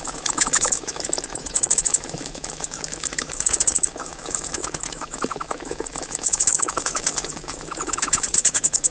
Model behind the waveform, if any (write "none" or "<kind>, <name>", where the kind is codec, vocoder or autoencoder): autoencoder, DAC-VAE